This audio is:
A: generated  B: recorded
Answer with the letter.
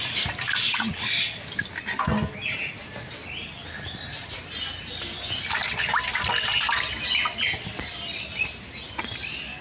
B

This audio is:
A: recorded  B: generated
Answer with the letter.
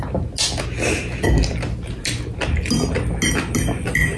A